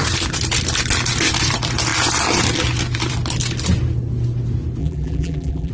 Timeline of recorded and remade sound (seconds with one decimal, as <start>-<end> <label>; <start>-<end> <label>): 0.0-4.8 recorded; 4.8-5.7 remade